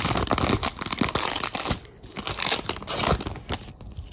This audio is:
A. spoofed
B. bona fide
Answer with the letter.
B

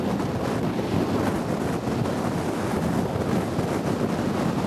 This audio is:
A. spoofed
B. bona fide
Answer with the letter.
B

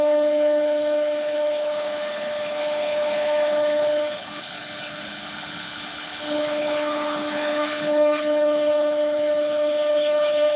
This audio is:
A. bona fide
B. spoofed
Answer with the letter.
B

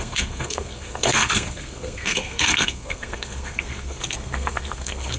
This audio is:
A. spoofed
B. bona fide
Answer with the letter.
A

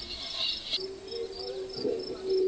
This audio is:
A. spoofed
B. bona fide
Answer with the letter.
B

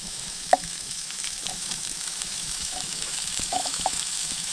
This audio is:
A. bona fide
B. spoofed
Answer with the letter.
B